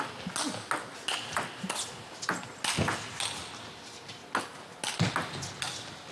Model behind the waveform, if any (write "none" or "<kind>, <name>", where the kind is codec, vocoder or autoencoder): none